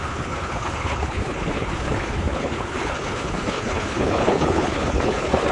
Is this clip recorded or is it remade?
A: remade